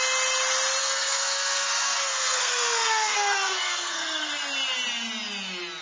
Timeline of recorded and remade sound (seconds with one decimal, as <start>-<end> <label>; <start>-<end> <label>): 0.0-0.8 recorded; 0.8-4.3 remade; 4.3-5.8 recorded